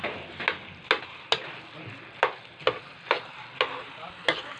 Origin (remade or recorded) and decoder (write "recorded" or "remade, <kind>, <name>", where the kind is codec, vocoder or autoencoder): recorded